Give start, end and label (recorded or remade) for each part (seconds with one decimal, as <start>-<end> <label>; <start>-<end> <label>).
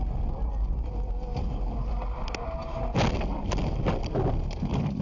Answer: 0.0-5.0 recorded